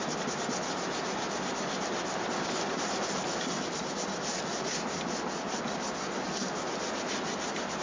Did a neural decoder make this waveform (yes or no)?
no